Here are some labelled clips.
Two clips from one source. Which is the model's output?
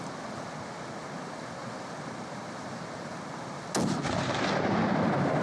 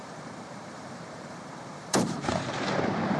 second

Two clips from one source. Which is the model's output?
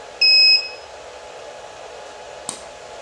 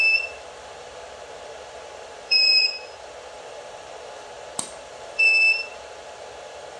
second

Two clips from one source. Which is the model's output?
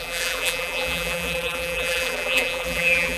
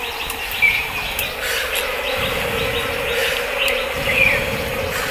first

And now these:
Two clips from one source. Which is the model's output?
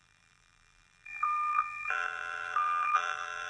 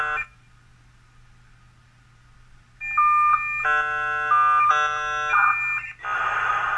first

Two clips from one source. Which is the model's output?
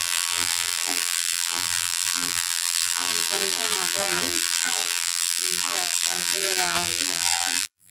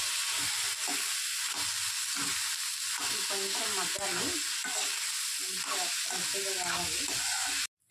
first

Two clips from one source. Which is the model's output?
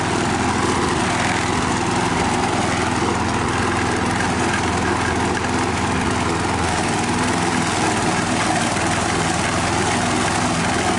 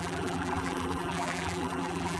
second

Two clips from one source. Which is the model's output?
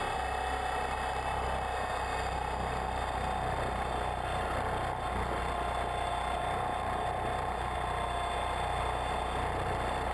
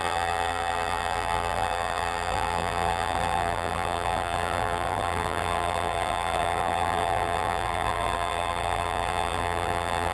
second